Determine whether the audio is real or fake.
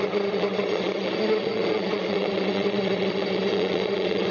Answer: fake